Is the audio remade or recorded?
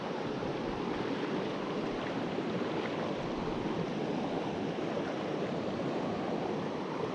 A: remade